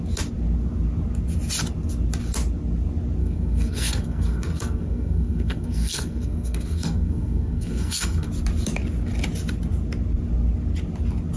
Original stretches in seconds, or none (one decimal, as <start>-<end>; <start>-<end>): 0.0-3.2; 8.3-11.4